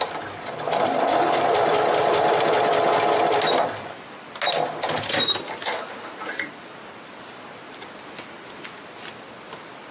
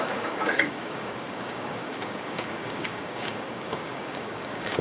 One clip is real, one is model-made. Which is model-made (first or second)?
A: second